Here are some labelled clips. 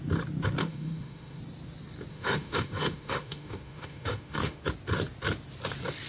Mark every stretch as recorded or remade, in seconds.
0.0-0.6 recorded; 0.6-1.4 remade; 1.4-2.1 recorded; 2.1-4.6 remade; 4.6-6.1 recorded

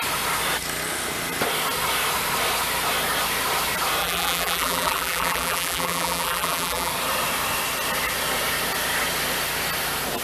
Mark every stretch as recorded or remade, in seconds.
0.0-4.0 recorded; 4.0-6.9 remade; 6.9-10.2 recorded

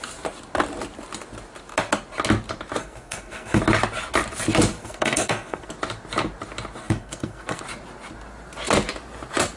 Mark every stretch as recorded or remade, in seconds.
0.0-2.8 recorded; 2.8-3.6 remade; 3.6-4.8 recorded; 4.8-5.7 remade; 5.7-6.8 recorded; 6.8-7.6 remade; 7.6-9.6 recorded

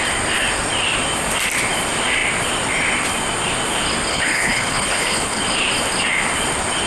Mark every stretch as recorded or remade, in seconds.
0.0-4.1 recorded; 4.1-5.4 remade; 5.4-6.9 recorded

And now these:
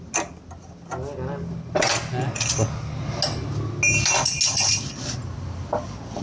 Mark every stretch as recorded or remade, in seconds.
0.0-6.2 recorded

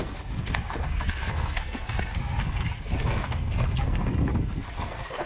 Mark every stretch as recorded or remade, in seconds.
0.0-5.3 remade

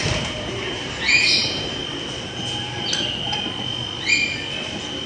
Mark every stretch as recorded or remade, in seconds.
0.0-1.8 remade; 1.8-5.1 recorded